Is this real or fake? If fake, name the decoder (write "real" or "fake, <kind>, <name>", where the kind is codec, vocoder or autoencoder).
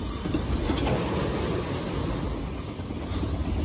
real